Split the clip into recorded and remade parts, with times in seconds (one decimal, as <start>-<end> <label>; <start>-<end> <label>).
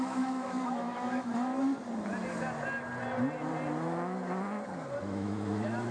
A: 0.0-1.5 remade; 1.5-5.0 recorded; 5.0-5.9 remade